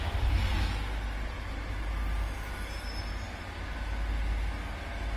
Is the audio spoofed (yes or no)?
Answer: no